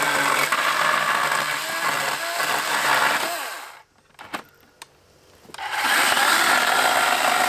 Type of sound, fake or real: real